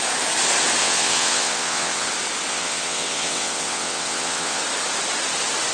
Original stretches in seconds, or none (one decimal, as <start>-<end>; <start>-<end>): 0.0-0.8; 2.1-2.5; 4.6-5.7